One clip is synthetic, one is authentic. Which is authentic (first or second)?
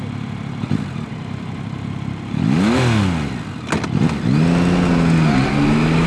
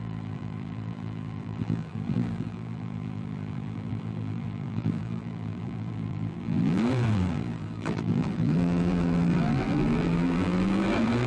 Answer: first